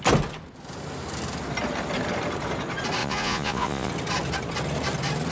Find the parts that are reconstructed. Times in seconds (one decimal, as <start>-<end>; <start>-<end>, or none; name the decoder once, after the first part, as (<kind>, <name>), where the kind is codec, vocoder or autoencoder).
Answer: 3.0-3.9 (vocoder, Vocos)